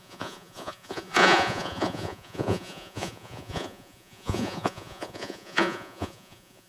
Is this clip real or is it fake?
fake